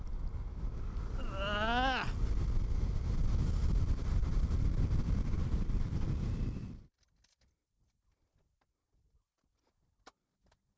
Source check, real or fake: real